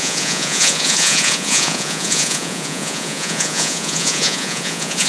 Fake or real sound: fake